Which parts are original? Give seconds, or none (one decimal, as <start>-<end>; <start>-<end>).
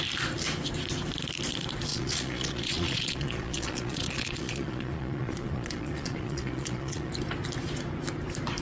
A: 0.0-1.9; 7.1-8.6